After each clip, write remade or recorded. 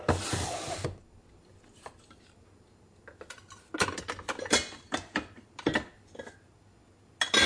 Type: recorded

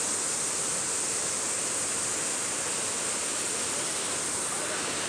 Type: recorded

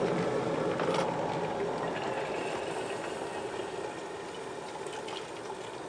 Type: recorded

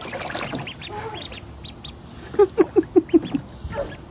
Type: recorded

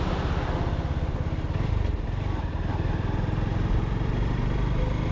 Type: recorded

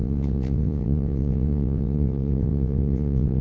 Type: remade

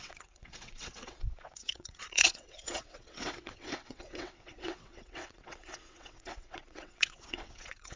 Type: remade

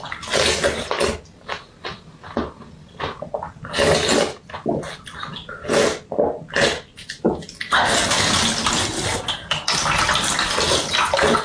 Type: recorded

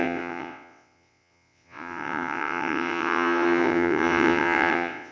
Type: remade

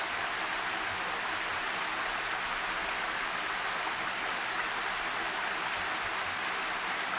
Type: recorded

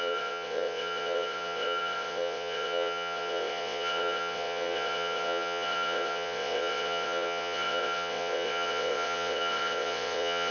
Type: remade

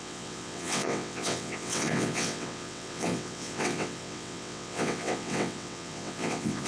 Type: remade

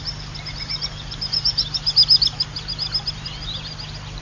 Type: recorded